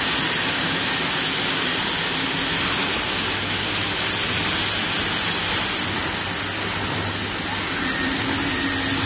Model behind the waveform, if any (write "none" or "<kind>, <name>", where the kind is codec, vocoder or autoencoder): none